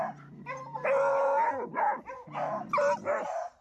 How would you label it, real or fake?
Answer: real